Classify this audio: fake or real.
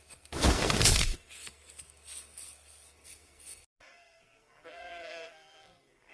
fake